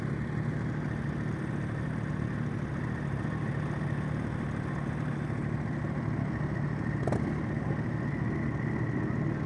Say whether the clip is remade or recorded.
recorded